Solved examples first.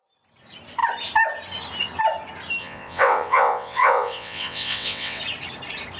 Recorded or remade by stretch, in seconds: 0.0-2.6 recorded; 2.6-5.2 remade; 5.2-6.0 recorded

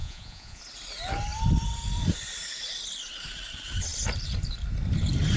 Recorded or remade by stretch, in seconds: 0.0-0.6 remade; 0.6-5.4 recorded

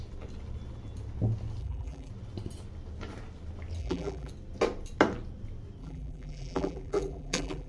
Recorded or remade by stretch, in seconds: 0.0-1.6 recorded; 1.6-2.1 remade; 2.1-3.8 recorded; 3.8-4.3 remade; 4.3-5.8 recorded; 5.8-7.7 remade

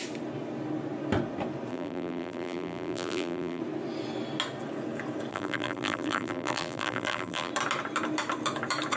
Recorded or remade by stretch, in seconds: 0.0-1.7 recorded; 1.7-3.6 remade; 3.6-5.3 recorded; 5.3-7.5 remade; 7.5-9.0 recorded

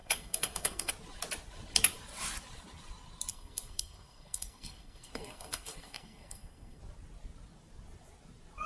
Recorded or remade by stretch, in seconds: 0.0-0.9 remade; 0.9-3.3 recorded; 3.3-6.8 remade; 6.8-8.7 recorded

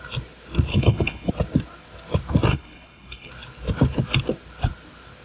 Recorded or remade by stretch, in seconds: 0.0-0.7 recorded; 0.7-1.3 remade; 1.3-2.5 recorded; 2.5-3.3 remade; 3.3-5.2 recorded

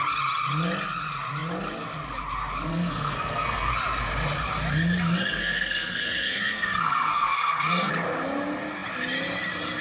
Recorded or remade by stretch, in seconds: 0.0-2.7 recorded; 2.7-3.7 remade; 3.7-5.4 recorded; 5.4-7.9 remade; 7.9-9.8 recorded